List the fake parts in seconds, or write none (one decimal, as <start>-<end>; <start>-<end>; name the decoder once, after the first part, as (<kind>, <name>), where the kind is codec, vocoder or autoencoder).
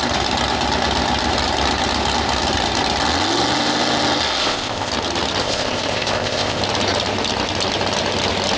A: 4.4-4.9 (codec, ZipCodec); 5.4-6.6